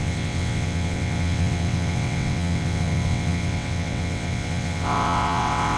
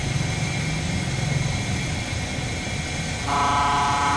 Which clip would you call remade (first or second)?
first